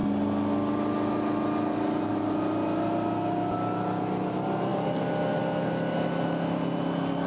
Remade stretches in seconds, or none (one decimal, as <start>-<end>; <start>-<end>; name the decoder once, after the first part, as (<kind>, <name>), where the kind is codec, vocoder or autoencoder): none